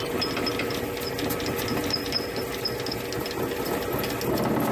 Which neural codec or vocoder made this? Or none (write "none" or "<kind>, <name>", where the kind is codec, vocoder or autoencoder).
none